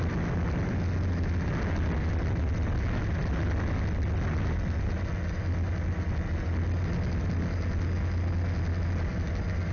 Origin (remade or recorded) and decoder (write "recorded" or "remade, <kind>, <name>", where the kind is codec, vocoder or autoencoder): recorded